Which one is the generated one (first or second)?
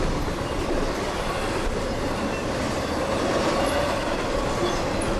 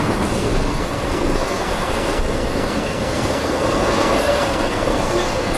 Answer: second